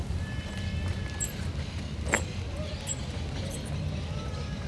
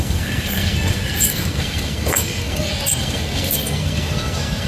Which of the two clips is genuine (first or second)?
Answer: first